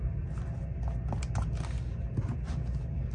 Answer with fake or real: real